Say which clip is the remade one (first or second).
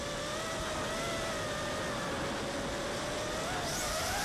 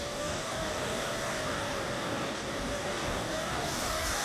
second